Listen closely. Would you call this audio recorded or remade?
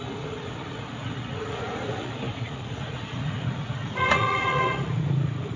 remade